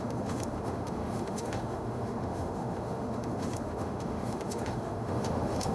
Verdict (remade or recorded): remade